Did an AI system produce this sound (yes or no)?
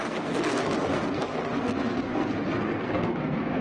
yes